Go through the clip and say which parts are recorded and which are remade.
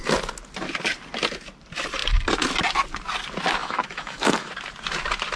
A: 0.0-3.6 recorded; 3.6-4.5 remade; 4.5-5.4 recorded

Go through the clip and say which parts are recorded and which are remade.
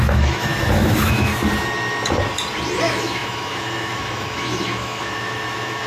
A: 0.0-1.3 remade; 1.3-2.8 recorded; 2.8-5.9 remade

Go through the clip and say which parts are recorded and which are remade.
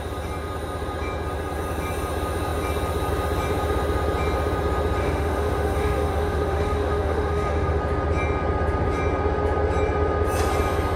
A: 0.0-5.0 recorded; 5.0-7.8 remade; 7.8-11.0 recorded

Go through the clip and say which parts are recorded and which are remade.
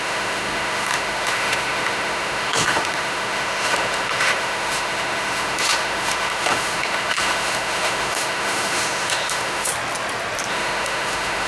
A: 0.0-9.7 remade; 9.7-10.5 recorded; 10.5-11.5 remade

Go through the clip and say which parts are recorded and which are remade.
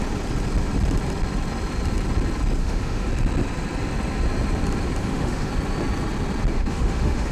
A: 0.0-2.6 recorded; 2.6-3.1 remade; 3.1-5.0 recorded; 5.0-5.5 remade; 5.5-6.5 recorded; 6.5-7.3 remade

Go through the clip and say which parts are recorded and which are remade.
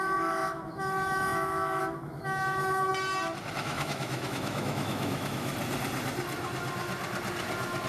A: 0.0-2.9 remade; 2.9-3.6 recorded; 3.6-5.5 remade; 5.5-7.9 recorded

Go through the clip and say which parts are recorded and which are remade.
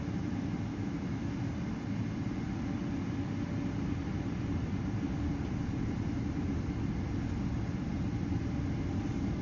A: 0.0-0.7 recorded; 0.7-1.3 remade; 1.3-9.4 recorded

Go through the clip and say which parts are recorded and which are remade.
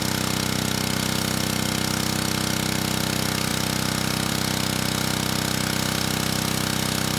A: 0.0-7.2 recorded